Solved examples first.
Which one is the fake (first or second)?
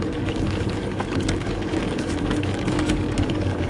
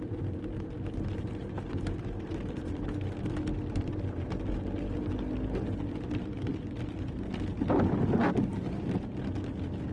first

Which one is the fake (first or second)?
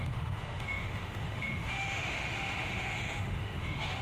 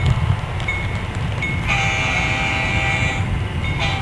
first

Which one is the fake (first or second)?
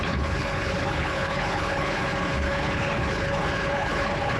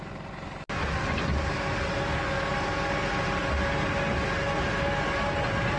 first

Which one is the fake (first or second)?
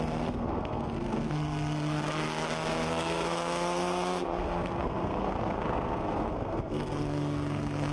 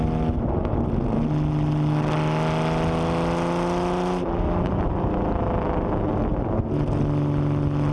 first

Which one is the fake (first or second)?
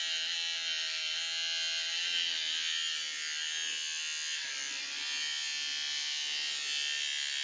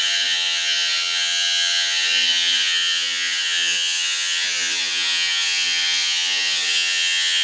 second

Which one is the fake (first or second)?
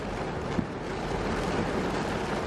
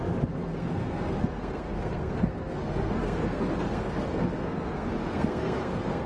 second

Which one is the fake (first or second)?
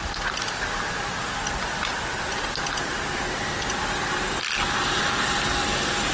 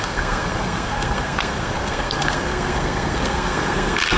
second